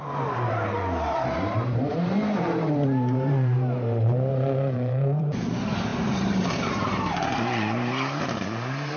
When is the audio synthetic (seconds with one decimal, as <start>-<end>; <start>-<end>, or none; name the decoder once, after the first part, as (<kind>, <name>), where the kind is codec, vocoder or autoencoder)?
0.0-9.0 (vocoder, BigVGAN v2)